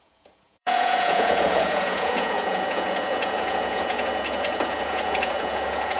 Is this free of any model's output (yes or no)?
no